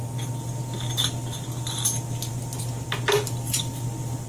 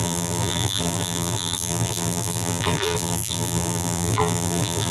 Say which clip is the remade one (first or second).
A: second